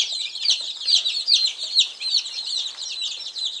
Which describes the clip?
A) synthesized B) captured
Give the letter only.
A